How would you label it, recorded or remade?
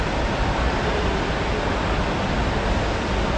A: recorded